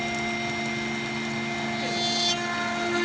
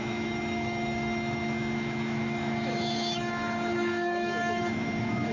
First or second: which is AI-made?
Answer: second